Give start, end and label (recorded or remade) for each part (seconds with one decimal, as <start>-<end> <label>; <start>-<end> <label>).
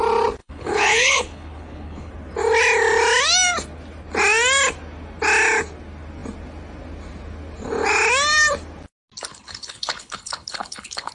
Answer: 0.0-0.4 recorded; 0.4-2.1 remade; 2.1-9.3 recorded; 9.3-11.1 remade